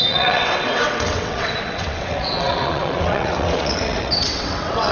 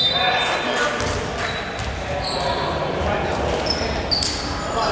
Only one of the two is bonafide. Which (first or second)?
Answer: second